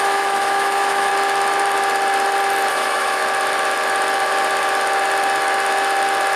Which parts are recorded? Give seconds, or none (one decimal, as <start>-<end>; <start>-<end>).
1.1-2.7; 3.2-6.4

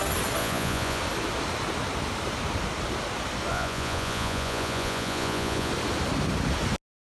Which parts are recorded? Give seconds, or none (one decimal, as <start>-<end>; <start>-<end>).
0.0-0.4; 1.0-3.5; 5.7-7.2

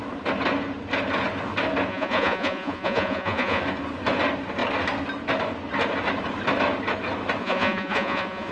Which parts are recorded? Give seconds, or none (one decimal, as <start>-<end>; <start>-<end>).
0.0-1.9; 3.6-7.4

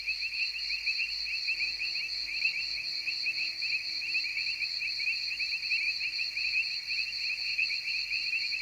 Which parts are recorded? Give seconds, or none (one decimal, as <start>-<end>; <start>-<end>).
0.0-4.3

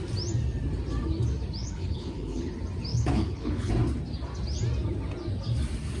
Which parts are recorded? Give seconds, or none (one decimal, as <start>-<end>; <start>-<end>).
0.0-1.6; 2.5-2.9; 3.7-6.0